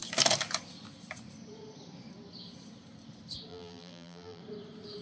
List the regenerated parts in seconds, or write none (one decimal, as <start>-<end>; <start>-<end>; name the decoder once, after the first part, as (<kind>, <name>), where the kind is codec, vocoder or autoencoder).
3.5-4.4 (vocoder, BigVGAN v2)